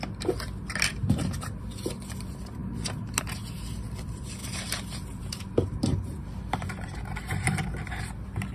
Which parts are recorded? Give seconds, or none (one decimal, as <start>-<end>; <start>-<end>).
0.0-0.9; 1.6-4.4; 8.0-8.5